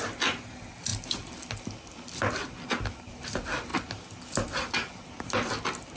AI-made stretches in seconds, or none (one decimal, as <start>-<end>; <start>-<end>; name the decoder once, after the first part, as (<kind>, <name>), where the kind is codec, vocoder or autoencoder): none